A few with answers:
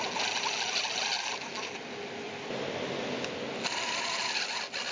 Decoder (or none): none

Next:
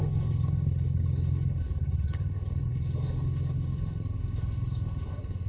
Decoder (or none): codec, HILCodec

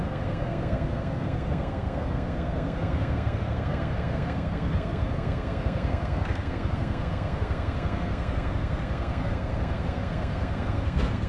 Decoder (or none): codec, SNAC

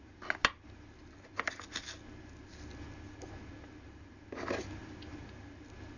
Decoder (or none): none